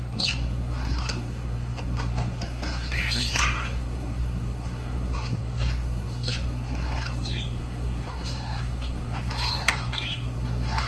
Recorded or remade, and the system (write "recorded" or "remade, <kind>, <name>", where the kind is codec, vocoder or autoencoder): remade, codec, SNAC